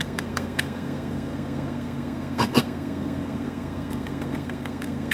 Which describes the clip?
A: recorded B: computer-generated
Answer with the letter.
B